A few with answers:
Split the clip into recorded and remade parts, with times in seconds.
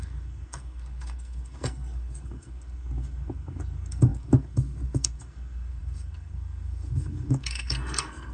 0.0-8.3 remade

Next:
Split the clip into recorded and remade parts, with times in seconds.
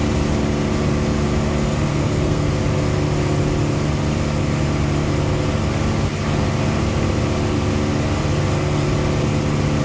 0.0-1.9 recorded; 1.9-2.5 remade; 2.5-9.8 recorded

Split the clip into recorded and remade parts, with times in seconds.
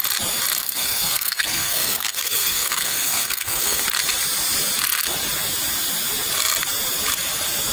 0.0-0.6 recorded; 0.6-3.8 remade; 3.8-7.7 recorded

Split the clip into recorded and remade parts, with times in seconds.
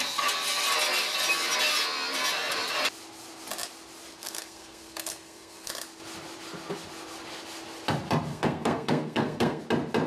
0.0-4.1 recorded; 4.1-5.7 remade; 5.7-8.3 recorded; 8.3-9.6 remade; 9.6-10.1 recorded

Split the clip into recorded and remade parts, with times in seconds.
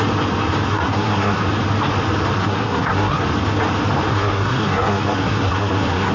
0.0-0.7 recorded; 0.7-1.4 remade; 1.4-2.4 recorded; 2.4-3.2 remade; 3.2-4.1 recorded; 4.1-6.1 remade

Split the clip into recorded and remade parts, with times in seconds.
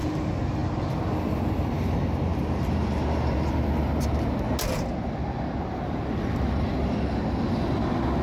0.0-8.2 recorded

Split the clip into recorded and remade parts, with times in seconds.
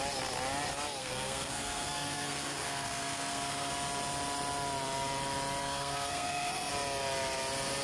0.0-1.0 recorded; 1.0-3.7 remade; 3.7-5.6 recorded; 5.6-6.7 remade; 6.7-7.8 recorded